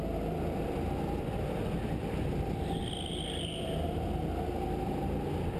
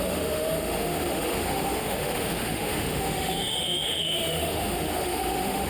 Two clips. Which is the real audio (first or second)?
first